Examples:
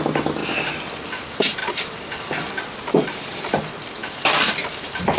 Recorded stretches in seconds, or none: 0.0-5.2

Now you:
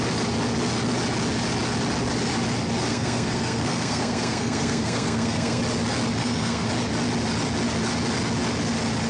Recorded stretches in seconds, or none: 0.0-2.9; 5.6-6.2; 6.7-9.1

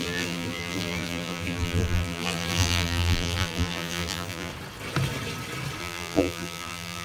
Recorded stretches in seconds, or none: 4.5-5.8